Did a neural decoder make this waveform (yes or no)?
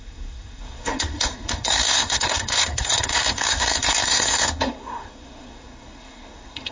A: yes